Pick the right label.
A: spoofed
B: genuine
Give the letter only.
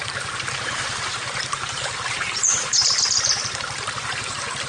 A